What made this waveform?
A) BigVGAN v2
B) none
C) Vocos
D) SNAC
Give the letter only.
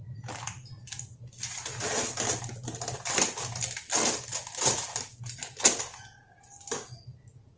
B